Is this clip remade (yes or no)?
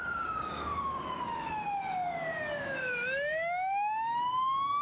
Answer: yes